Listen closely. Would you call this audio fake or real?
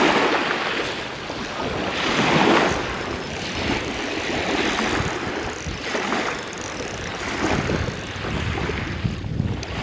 real